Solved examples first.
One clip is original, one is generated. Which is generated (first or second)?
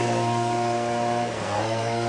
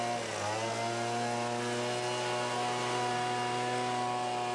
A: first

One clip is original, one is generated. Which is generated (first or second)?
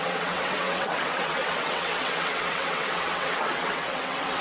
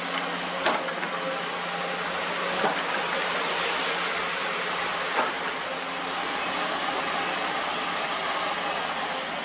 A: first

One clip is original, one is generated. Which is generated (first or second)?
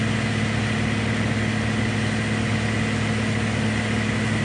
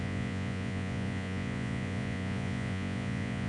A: second